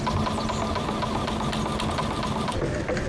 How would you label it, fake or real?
real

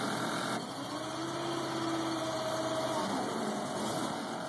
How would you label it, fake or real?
real